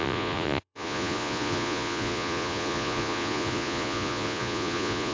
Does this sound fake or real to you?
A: fake